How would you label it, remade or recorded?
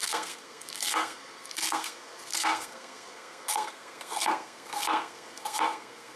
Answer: remade